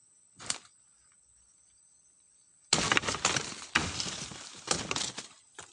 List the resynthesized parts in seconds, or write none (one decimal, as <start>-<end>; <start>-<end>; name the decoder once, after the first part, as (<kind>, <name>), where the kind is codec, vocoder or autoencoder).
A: none